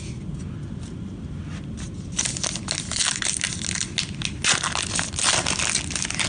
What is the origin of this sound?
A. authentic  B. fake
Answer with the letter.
A